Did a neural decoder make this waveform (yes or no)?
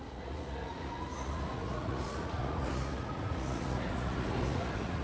yes